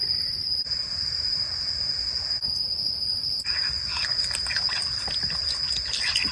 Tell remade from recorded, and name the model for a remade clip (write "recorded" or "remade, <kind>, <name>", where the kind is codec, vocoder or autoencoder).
recorded